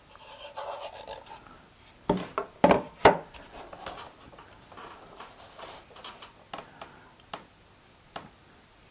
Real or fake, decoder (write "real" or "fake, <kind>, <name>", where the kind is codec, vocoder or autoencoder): real